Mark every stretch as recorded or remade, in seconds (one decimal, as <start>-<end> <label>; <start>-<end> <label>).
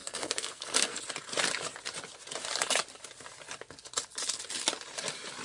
0.0-1.0 remade; 1.0-5.4 recorded